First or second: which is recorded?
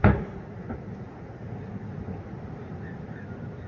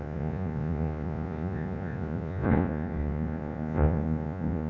first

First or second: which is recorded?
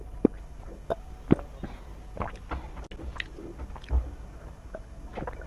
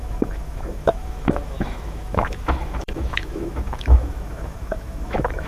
first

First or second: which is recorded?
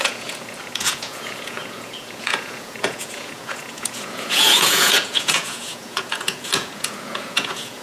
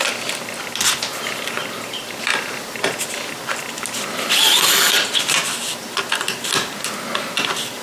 second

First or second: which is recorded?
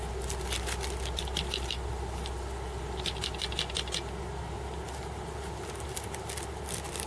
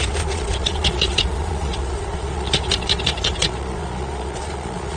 first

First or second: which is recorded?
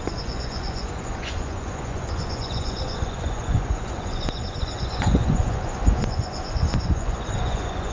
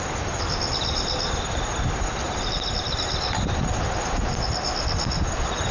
second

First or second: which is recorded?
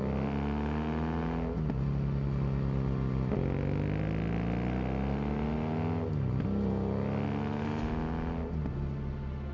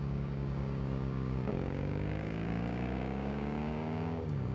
first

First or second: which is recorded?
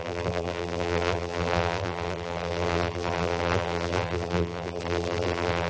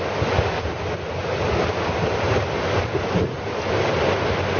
second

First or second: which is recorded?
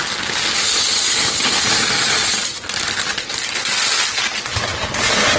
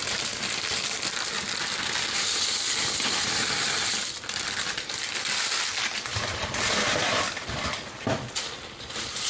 first